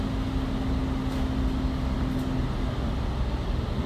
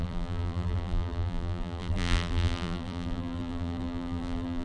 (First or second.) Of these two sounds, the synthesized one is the second